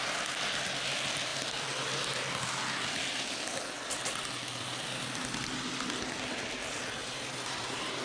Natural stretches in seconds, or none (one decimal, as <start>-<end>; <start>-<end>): 0.0-7.0